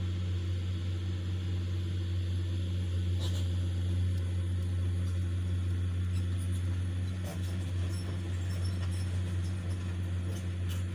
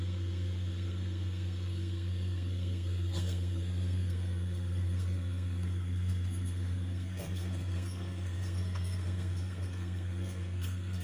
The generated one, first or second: second